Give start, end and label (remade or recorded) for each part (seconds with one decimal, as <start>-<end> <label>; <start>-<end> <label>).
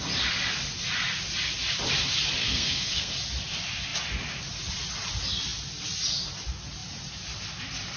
0.0-2.4 recorded; 2.4-3.1 remade; 3.1-8.0 recorded